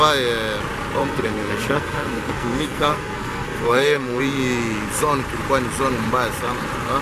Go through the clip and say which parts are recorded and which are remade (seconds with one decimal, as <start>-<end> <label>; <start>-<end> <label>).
0.0-1.0 recorded; 1.0-4.2 remade; 4.2-7.0 recorded

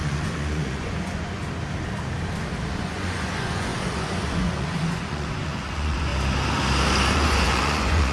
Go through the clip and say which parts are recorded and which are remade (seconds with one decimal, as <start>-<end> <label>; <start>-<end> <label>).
0.0-1.4 remade; 1.4-2.8 recorded; 2.8-6.1 remade; 6.1-7.1 recorded; 7.1-8.1 remade

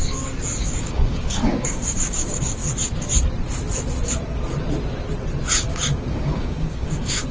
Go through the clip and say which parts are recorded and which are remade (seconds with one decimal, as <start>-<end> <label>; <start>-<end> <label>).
0.0-0.7 recorded; 0.7-2.6 remade; 2.6-5.7 recorded; 5.7-7.3 remade

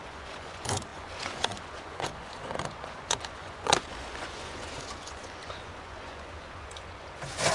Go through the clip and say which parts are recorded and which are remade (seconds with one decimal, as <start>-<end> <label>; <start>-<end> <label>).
0.0-7.5 remade

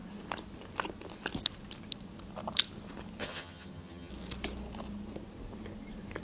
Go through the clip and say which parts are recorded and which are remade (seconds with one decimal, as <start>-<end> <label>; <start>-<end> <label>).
0.0-3.2 recorded; 3.2-4.1 remade; 4.1-6.2 recorded